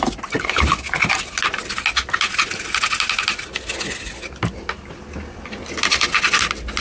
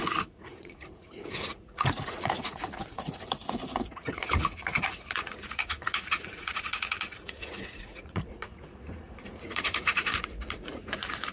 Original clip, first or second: first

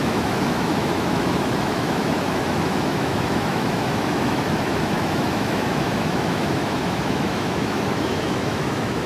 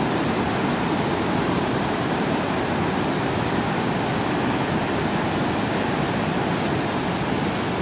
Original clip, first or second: second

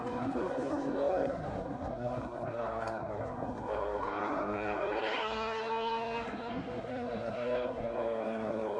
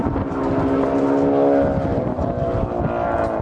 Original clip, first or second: second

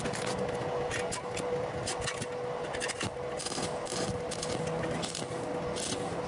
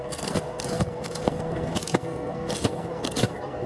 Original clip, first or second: first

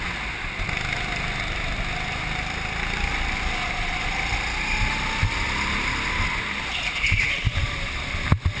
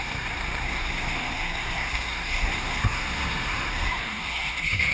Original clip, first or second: first